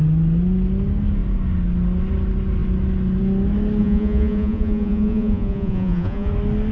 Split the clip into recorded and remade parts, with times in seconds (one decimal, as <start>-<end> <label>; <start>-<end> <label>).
0.0-3.8 recorded; 3.8-6.3 remade; 6.3-6.7 recorded